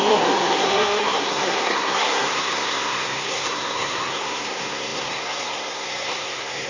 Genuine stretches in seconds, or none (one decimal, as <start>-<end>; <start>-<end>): none